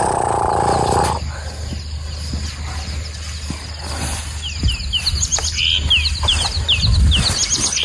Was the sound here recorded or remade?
recorded